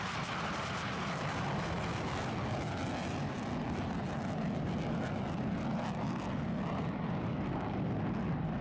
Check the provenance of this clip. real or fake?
real